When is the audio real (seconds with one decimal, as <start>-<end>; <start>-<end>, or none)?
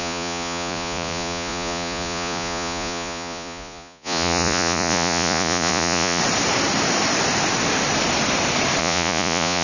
6.2-8.8